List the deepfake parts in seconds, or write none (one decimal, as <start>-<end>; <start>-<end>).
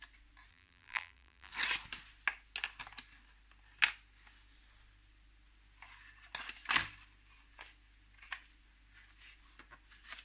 0.5-1.5